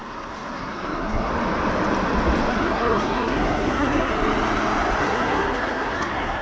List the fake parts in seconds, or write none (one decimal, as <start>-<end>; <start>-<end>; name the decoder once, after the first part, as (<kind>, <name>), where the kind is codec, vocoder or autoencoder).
0.0-1.3 (codec, SNAC); 2.5-4.1; 5.0-6.4